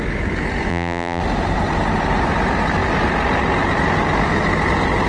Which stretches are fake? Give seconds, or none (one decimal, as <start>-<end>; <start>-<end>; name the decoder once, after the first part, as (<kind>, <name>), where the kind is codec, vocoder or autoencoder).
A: 0.7-1.2 (vocoder, BigVGAN v2)